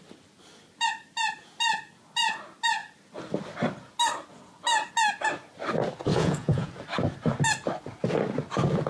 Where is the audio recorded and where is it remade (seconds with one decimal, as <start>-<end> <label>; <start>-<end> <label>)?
0.0-6.1 recorded; 6.1-6.7 remade; 6.7-8.9 recorded